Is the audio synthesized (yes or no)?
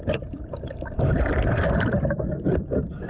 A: yes